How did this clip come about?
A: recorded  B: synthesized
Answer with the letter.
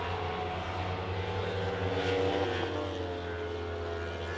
A